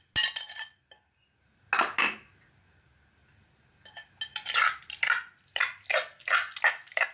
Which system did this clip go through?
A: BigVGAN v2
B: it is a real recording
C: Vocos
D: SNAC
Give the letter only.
B